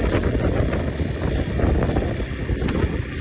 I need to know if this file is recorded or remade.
recorded